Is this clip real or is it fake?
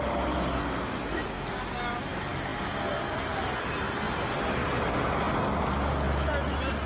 real